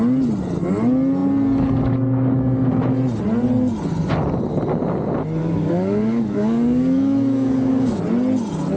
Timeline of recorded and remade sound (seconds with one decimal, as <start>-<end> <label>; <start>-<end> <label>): 0.0-5.4 recorded; 5.4-8.0 remade; 8.0-8.8 recorded